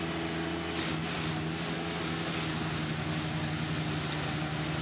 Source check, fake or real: real